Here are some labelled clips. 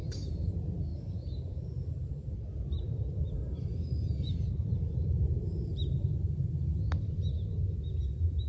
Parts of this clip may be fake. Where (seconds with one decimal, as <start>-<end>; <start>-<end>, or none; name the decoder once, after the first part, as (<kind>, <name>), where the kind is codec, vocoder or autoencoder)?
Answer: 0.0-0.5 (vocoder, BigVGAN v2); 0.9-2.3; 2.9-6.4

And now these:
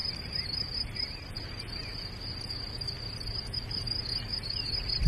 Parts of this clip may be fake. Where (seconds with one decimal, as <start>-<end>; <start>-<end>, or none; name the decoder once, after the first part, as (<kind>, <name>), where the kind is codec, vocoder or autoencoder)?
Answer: none

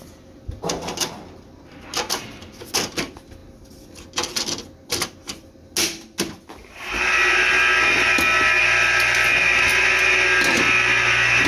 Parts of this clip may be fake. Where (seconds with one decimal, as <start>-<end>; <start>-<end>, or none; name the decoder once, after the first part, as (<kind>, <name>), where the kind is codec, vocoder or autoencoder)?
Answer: none